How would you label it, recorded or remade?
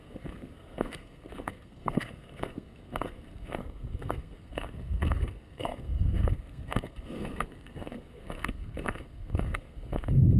remade